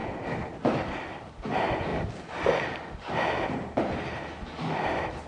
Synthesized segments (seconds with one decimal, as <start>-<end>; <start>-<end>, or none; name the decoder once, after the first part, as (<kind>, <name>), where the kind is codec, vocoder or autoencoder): none